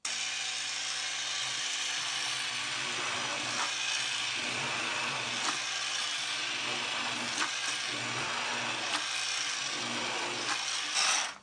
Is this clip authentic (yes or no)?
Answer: yes